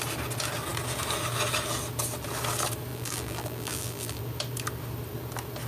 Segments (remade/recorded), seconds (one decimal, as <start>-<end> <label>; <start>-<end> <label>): 0.0-2.9 recorded; 2.9-4.2 remade; 4.2-5.7 recorded